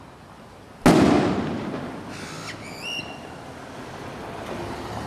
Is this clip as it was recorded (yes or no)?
yes